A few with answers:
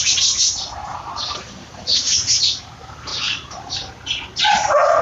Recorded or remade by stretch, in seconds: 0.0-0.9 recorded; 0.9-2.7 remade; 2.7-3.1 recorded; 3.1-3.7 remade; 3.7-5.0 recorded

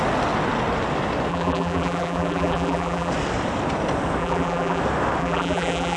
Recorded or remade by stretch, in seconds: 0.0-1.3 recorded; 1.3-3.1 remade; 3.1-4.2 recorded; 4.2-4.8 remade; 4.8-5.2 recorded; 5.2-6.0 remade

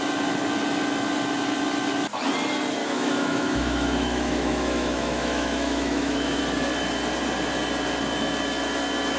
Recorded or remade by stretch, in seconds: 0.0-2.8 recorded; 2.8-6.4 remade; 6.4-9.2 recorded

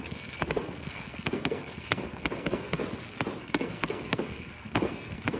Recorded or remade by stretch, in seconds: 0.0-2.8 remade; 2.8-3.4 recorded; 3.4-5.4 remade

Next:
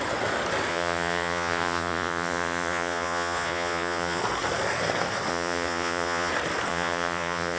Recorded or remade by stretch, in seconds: 0.0-0.7 recorded; 0.7-4.2 remade; 4.2-5.3 recorded; 5.3-6.3 remade; 6.3-6.7 recorded; 6.7-7.6 remade

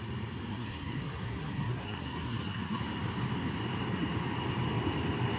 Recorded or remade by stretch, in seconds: 0.0-0.5 recorded; 0.5-2.8 remade; 2.8-5.4 recorded